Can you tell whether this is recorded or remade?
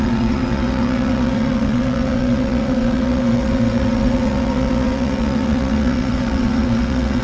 remade